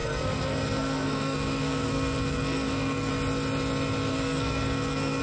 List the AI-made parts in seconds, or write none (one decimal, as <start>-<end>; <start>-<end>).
0.0-3.1; 4.1-5.2